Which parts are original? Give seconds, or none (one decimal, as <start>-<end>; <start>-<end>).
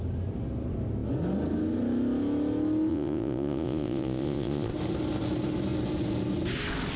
0.0-2.9; 4.7-7.0